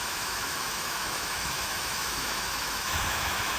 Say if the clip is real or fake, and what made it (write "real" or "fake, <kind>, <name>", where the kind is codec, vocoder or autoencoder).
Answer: fake, autoencoder, DAC-VAE